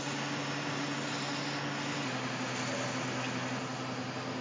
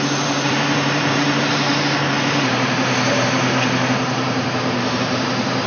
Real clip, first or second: first